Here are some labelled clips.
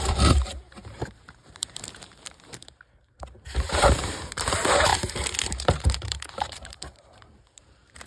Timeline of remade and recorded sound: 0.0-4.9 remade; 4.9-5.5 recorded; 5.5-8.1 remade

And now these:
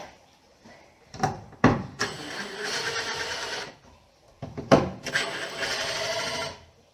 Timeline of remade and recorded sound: 0.0-0.5 recorded; 0.5-3.7 remade; 3.7-6.9 recorded